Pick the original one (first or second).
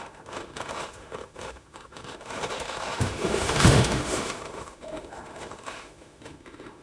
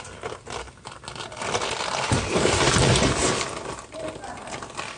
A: second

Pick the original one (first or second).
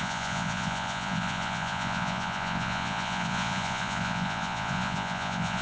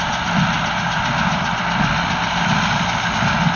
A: second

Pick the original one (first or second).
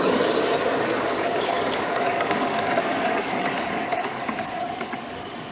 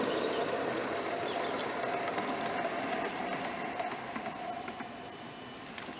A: second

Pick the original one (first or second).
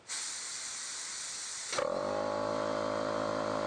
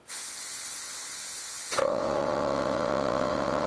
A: first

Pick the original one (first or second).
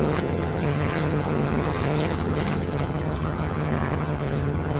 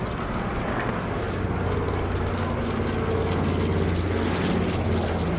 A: second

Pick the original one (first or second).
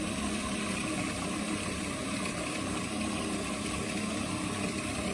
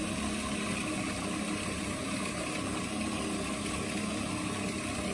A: second